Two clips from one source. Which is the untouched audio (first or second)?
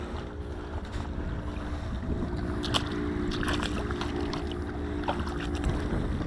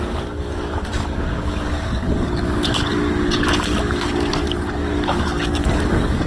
first